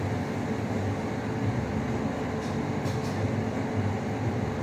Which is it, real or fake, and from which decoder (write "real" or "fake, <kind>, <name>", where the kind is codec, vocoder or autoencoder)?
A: real